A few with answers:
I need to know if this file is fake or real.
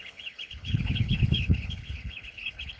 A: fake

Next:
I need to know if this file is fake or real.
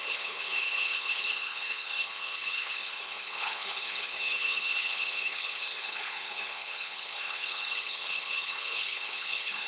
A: fake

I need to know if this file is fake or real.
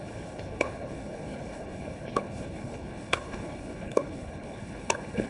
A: fake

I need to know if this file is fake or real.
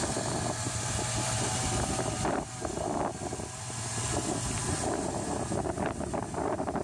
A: real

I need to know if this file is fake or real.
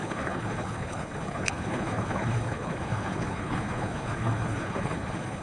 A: fake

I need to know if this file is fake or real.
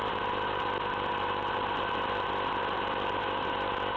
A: real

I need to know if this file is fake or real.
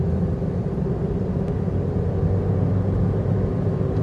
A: real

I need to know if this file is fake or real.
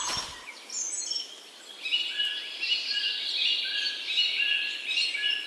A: real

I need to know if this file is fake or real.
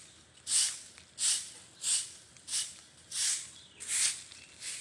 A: real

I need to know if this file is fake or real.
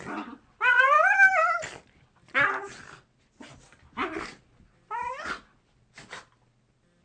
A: real